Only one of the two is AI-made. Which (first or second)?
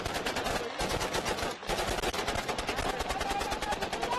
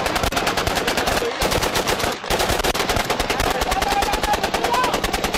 second